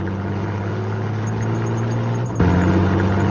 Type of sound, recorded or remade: recorded